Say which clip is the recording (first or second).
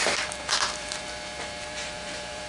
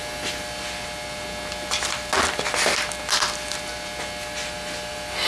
second